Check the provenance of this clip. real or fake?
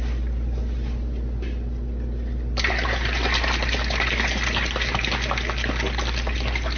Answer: real